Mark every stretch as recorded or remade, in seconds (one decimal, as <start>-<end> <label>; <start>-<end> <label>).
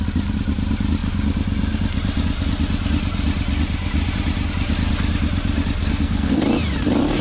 0.0-5.8 recorded; 5.8-6.4 remade; 6.4-7.2 recorded